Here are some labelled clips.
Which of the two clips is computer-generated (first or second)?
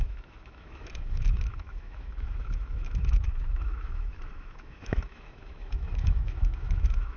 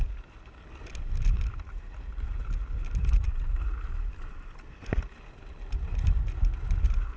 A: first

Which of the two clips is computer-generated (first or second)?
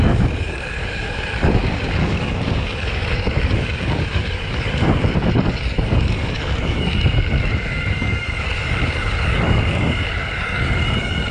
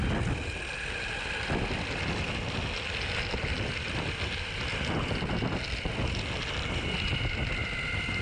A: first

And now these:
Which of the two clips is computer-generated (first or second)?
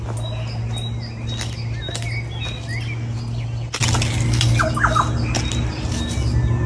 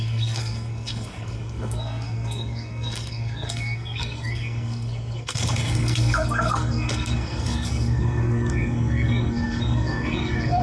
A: second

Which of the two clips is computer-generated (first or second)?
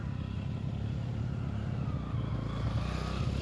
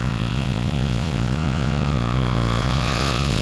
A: second